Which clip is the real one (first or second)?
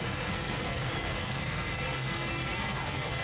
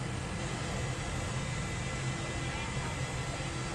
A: second